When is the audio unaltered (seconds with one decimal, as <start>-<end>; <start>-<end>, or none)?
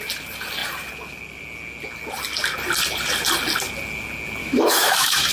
0.0-4.4